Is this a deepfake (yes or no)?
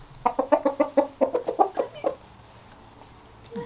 no